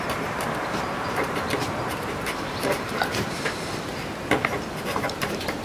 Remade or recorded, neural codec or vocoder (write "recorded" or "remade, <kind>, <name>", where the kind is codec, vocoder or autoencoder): remade, vocoder, BigVGAN v2